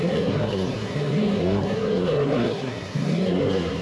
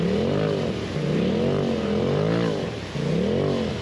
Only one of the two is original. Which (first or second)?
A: second